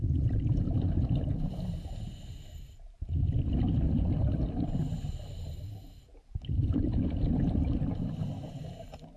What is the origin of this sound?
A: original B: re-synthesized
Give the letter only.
A